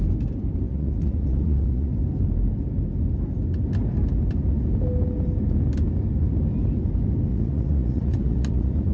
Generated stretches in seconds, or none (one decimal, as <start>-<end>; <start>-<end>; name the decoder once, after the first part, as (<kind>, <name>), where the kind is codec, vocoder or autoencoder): 0.7-1.9 (vocoder, Vocos); 7.3-8.9